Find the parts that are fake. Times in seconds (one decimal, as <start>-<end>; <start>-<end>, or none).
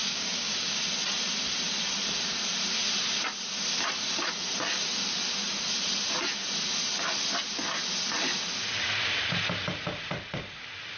0.0-0.8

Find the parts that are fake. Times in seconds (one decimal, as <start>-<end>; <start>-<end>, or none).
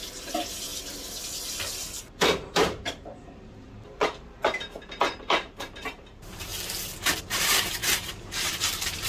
0.0-0.7; 2.0-6.5; 7.2-9.1